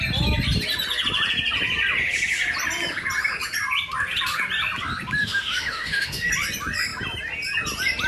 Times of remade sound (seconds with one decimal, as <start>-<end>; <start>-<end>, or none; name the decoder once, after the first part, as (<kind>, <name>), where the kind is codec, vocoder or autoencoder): 5.2-6.3 (autoencoder, DAC-VAE)